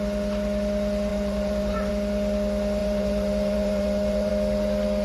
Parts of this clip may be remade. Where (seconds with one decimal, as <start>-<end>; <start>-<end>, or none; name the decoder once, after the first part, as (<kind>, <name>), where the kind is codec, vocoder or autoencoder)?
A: 1.1-1.9 (vocoder, BigVGAN v2); 2.8-4.3